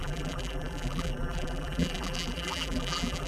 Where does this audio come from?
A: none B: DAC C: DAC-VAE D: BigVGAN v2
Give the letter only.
D